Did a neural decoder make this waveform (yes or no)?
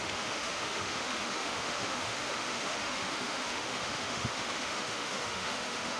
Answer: yes